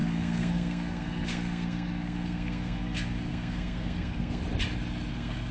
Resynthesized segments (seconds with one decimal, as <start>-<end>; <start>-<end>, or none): 0.0-4.4; 5.1-5.5